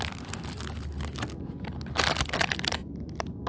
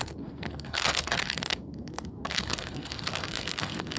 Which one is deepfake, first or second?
second